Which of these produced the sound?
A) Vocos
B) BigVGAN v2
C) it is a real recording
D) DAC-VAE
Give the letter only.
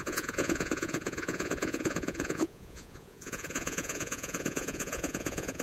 A